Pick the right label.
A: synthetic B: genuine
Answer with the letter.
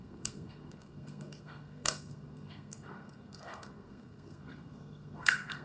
A